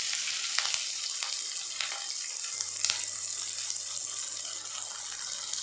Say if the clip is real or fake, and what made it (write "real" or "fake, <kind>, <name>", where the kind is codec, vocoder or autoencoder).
real